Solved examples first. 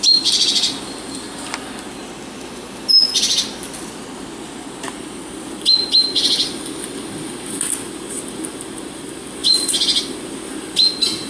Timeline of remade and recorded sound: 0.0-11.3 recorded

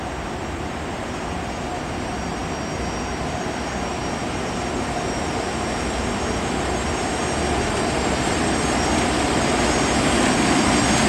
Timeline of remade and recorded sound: 0.0-11.1 recorded